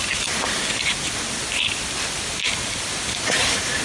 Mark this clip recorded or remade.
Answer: recorded